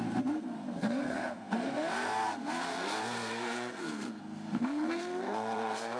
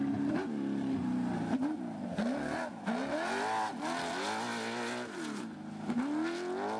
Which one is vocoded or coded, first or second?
first